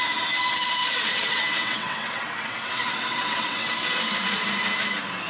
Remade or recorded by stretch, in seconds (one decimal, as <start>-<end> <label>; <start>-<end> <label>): 0.0-0.8 recorded; 0.8-4.0 remade; 4.0-5.3 recorded